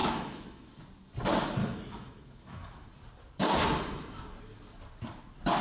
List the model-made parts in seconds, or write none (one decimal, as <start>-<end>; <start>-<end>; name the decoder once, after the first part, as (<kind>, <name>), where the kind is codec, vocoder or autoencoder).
0.0-0.8 (autoencoder, DAC-VAE); 1.6-2.9